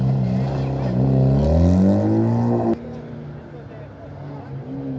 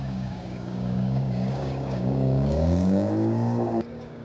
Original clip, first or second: first